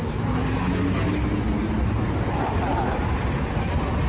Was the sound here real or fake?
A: real